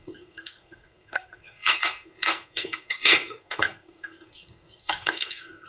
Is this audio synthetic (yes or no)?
yes